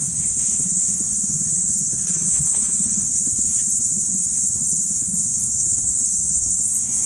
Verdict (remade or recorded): remade